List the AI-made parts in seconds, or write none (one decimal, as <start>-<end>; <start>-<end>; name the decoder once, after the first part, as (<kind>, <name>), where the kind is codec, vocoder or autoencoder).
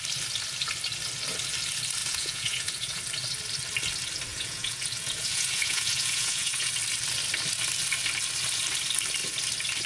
2.0-3.0 (vocoder, Vocos); 4.3-6.7